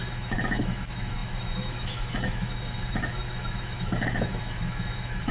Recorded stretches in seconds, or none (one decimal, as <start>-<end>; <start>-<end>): none